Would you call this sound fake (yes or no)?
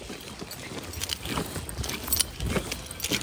no